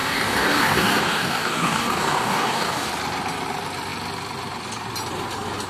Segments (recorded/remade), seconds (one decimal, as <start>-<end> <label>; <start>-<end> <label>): 0.0-2.9 remade; 2.9-5.7 recorded